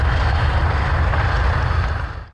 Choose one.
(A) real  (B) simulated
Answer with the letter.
A